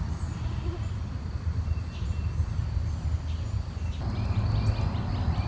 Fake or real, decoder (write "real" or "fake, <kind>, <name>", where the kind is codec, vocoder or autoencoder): real